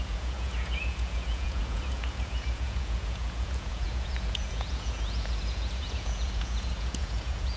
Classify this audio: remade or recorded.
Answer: remade